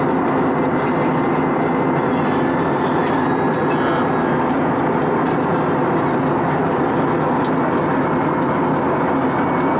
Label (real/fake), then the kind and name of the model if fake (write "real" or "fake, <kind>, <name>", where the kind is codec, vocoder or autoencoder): real